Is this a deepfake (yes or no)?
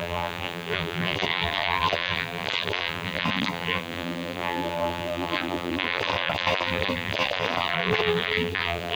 yes